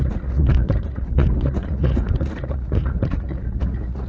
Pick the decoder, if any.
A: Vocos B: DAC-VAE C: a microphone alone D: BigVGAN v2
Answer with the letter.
A